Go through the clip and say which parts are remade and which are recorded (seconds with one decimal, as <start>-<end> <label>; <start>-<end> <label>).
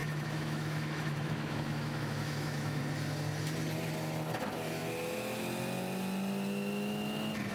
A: 0.0-2.8 remade; 2.8-7.5 recorded